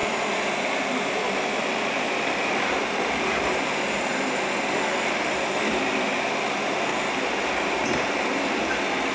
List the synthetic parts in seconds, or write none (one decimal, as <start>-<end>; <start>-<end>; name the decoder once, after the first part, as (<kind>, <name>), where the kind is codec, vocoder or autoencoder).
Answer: 0.0-6.9 (vocoder, BigVGAN v2); 8.1-9.1